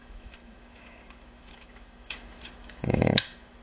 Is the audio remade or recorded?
remade